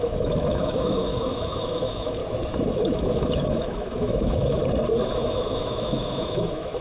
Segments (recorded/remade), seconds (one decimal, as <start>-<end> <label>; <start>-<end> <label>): 0.0-2.2 remade; 2.2-2.7 recorded; 2.7-4.6 remade; 4.6-5.1 recorded; 5.1-6.8 remade